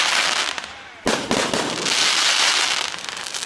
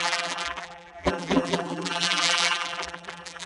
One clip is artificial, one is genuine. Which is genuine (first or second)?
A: first